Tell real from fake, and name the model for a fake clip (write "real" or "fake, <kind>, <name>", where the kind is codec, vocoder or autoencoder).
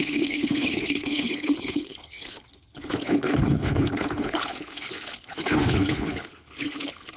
fake, codec, HILCodec